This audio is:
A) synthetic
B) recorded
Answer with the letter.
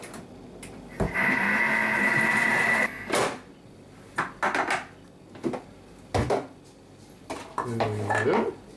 B